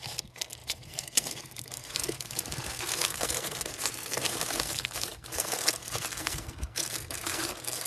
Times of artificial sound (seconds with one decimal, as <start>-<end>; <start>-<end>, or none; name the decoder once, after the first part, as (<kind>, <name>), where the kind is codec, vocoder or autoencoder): 0.0-7.9 (codec, SNAC)